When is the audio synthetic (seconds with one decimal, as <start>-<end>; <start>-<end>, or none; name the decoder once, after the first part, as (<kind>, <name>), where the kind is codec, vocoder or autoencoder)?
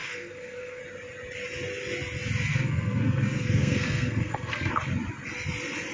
0.0-0.8 (codec, SNAC); 2.5-4.7